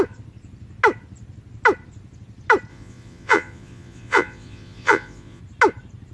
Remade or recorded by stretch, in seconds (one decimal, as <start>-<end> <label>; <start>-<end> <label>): 0.0-2.7 recorded; 2.7-5.4 remade; 5.4-6.1 recorded